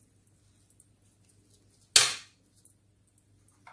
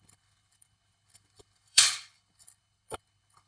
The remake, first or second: second